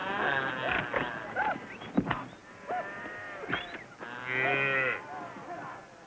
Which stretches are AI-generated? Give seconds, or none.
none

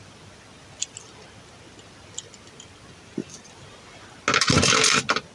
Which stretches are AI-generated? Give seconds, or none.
none

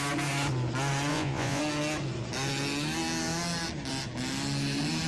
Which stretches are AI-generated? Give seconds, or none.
1.1-1.6

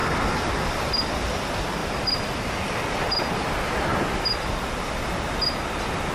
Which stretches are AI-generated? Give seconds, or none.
none